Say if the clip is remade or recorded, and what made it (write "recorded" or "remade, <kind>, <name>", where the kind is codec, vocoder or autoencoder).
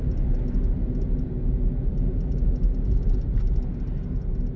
recorded